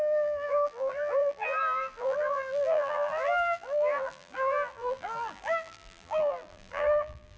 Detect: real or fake fake